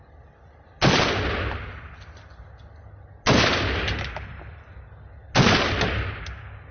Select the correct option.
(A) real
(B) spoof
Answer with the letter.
A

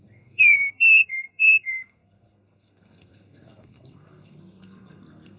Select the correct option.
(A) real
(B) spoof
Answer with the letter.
B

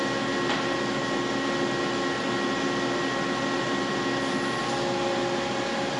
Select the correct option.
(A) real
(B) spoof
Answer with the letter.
A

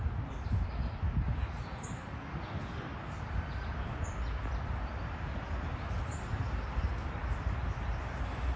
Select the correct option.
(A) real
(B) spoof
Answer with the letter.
A